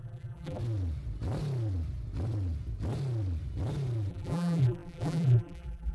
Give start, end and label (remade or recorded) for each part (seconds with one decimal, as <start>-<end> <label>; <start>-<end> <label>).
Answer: 0.0-0.6 remade; 0.6-4.1 recorded; 4.1-5.9 remade